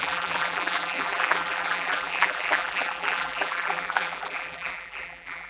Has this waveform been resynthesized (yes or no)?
yes